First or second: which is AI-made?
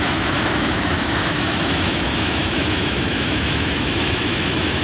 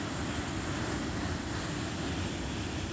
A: first